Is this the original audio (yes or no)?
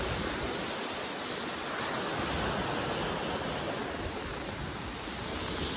yes